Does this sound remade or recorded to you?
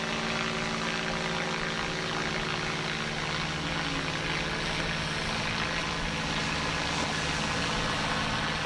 recorded